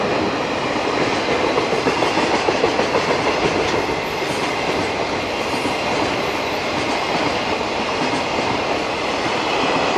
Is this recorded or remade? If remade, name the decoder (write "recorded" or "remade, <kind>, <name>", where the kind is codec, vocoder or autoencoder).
recorded